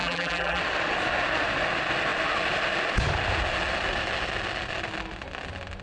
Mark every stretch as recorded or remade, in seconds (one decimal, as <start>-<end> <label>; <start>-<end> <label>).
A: 0.0-0.6 remade; 0.6-5.8 recorded